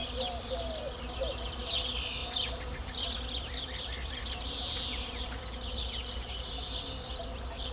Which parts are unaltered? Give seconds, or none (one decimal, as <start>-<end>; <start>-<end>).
0.0-2.2; 5.7-7.7